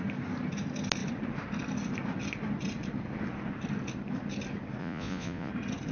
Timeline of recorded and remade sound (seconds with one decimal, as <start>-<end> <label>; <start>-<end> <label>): 0.0-4.8 recorded; 4.8-5.5 remade; 5.5-5.9 recorded